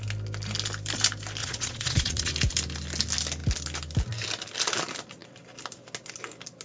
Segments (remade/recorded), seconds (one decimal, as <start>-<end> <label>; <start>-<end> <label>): 0.0-1.4 recorded; 1.4-2.3 remade; 2.3-6.6 recorded